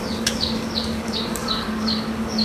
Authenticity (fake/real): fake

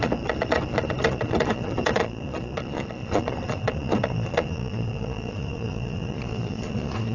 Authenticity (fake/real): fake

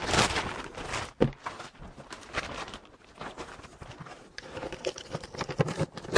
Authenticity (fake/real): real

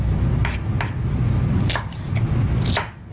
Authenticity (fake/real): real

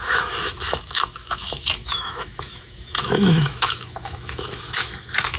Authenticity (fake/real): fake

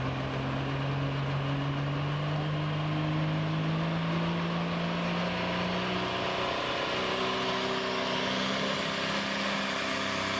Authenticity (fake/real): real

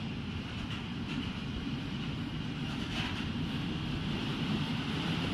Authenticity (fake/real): fake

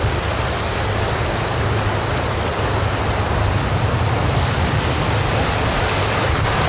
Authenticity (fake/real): real